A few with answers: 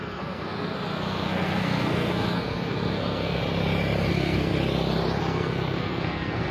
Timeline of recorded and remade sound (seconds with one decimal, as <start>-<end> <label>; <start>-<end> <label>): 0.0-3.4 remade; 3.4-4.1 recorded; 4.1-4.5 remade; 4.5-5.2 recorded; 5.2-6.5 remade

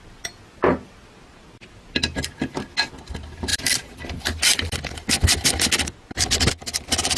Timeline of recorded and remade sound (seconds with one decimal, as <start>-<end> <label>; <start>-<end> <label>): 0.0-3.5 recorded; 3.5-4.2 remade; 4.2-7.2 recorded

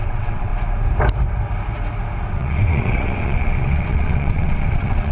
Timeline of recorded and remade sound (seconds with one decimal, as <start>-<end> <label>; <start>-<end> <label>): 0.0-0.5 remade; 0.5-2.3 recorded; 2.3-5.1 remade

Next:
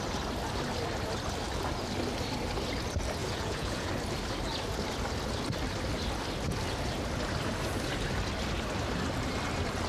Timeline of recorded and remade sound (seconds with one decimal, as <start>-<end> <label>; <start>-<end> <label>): 0.0-3.2 recorded; 3.2-3.9 remade; 3.9-9.9 recorded

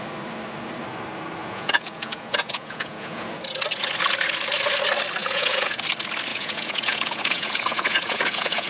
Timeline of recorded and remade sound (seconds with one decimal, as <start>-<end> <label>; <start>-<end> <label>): 0.0-1.4 recorded; 1.4-3.4 remade; 3.4-5.2 recorded; 5.2-5.8 remade; 5.8-6.3 recorded; 6.3-8.7 remade

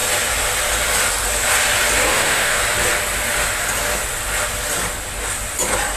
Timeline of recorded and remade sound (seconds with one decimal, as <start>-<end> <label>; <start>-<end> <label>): 0.0-2.1 recorded; 2.1-2.6 remade; 2.6-6.0 recorded

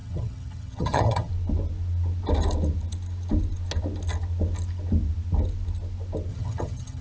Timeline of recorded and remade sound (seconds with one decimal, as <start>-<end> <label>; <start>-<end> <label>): 0.0-1.3 remade; 1.3-6.3 recorded; 6.3-7.0 remade